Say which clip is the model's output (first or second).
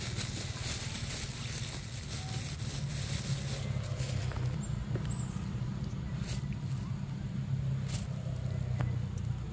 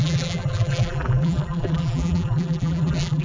second